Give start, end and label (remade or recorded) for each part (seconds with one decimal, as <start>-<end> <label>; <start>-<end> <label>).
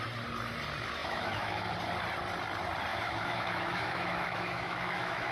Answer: 0.0-1.0 recorded; 1.0-1.7 remade; 1.7-2.9 recorded; 2.9-5.3 remade